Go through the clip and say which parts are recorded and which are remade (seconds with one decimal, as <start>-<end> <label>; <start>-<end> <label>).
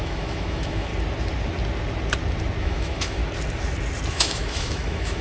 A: 0.0-0.9 remade; 0.9-2.6 recorded; 2.6-3.2 remade; 3.2-4.1 recorded; 4.1-5.2 remade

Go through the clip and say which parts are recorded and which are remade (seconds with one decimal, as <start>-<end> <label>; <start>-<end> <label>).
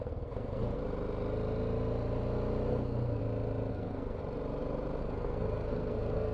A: 0.0-0.8 remade; 0.8-2.7 recorded; 2.7-3.2 remade; 3.2-3.7 recorded; 3.7-4.2 remade; 4.2-5.0 recorded; 5.0-6.3 remade